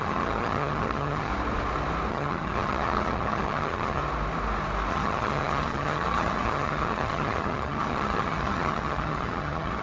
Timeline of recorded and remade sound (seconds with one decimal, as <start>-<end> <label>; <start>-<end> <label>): 0.0-1.3 remade; 1.3-2.1 recorded; 2.1-4.0 remade; 4.0-4.9 recorded; 4.9-9.8 remade

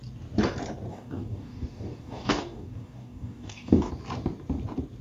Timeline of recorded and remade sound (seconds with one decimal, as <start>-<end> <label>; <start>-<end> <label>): 0.0-0.9 recorded; 0.9-3.9 remade; 3.9-5.0 recorded